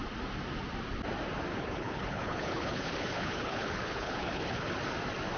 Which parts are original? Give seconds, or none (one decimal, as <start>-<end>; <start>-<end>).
0.0-1.5; 4.7-5.4